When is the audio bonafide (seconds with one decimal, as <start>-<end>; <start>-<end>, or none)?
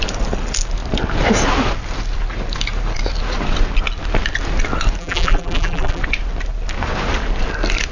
0.0-5.0; 6.0-7.9